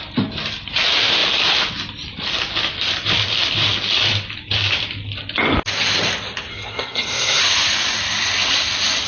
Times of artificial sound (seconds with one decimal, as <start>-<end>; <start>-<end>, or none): 6.5-7.4